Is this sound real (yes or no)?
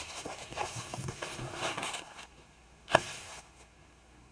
no